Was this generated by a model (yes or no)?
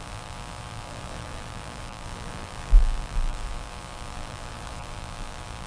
yes